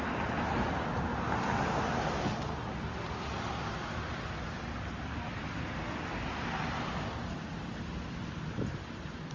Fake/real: real